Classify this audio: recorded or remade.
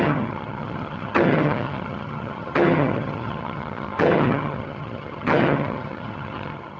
remade